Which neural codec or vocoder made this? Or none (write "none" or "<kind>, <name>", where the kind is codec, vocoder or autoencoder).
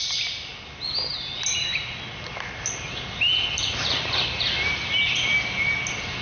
none